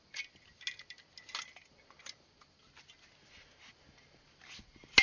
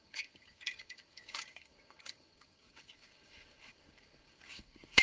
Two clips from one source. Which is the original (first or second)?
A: first